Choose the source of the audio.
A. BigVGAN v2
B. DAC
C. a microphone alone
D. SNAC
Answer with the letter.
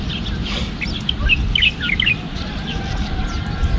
C